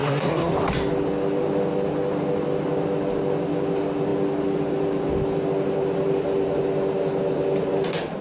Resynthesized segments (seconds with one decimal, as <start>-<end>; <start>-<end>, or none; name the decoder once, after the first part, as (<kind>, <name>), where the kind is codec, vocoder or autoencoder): 0.0-0.5 (codec, SNAC)